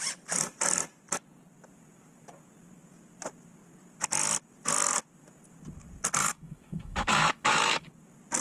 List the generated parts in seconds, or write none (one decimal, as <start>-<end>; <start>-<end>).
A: 6.2-7.9